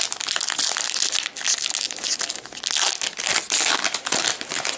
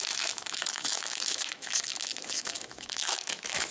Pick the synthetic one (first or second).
second